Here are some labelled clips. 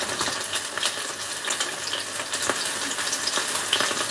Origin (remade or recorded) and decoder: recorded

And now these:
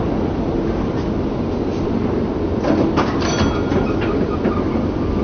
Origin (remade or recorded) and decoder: recorded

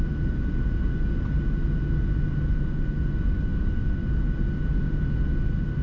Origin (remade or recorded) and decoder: recorded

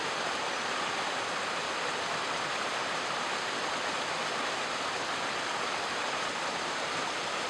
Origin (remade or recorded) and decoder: remade, vocoder, BigVGAN v2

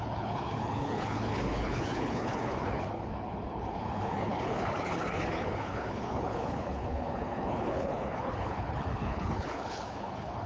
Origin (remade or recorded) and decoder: remade, codec, HILCodec